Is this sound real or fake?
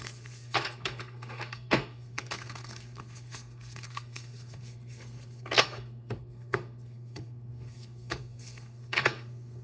fake